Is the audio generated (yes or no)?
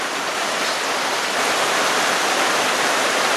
no